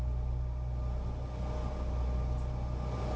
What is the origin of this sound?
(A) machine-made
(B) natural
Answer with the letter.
B